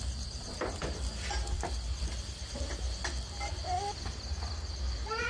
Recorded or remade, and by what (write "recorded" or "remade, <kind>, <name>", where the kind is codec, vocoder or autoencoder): recorded